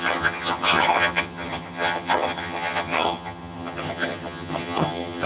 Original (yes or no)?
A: no